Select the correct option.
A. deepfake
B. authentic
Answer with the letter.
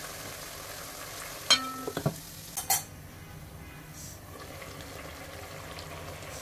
B